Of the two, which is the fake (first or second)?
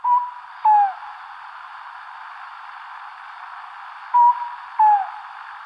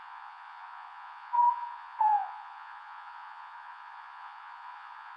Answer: second